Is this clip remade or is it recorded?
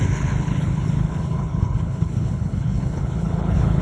remade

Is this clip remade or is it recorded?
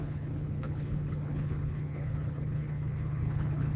remade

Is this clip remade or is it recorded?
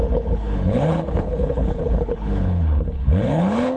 remade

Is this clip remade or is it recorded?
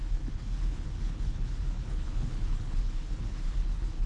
remade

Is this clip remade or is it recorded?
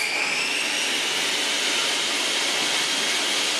recorded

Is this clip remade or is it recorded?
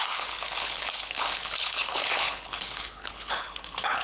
remade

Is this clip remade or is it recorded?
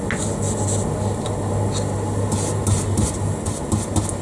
recorded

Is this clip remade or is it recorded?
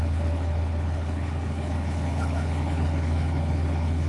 remade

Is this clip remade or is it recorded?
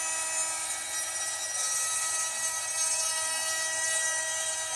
recorded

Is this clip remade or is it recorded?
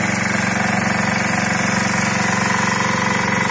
recorded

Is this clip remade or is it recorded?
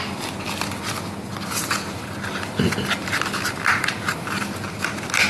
recorded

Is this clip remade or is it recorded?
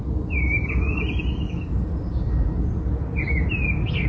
recorded